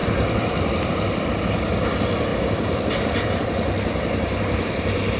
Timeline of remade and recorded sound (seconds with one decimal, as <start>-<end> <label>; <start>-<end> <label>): 0.0-0.9 remade; 0.9-2.3 recorded; 2.3-3.4 remade; 3.4-5.2 recorded